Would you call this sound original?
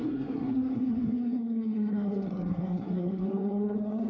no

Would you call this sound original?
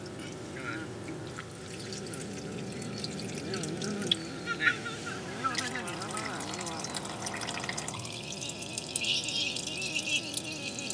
yes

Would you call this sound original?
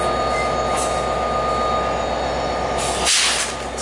yes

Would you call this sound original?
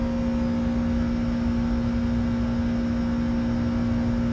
yes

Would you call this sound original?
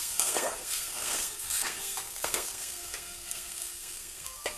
no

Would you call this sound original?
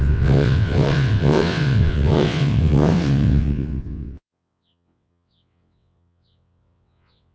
no